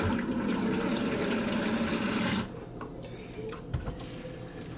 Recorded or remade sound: recorded